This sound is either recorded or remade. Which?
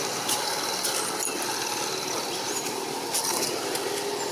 recorded